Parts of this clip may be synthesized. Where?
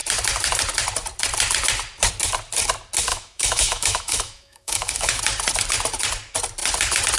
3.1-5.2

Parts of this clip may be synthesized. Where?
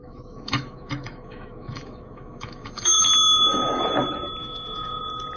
0.0-3.0; 4.4-5.0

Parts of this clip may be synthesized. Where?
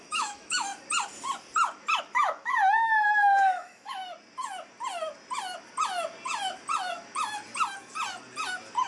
0.0-0.7; 2.0-4.0